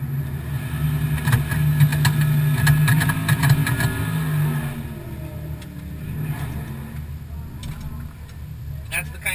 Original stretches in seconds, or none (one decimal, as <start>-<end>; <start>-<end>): 0.0-9.3